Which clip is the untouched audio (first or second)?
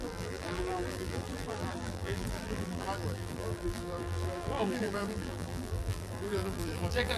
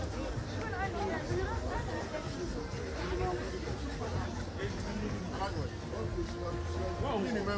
second